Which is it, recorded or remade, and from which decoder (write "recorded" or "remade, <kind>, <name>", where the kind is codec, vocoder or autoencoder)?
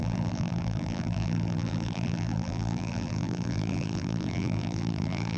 remade, vocoder, BigVGAN v2